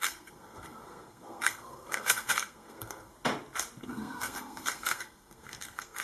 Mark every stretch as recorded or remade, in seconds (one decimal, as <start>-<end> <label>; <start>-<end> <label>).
0.0-3.1 remade; 3.1-3.8 recorded; 3.8-6.0 remade